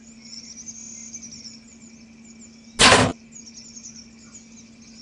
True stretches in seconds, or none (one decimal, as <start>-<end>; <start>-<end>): 0.0-5.0